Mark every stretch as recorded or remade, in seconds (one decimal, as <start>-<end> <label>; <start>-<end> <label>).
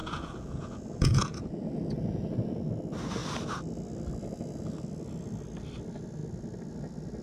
0.0-2.7 remade; 2.7-7.2 recorded